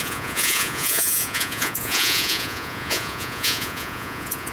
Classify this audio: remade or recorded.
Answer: remade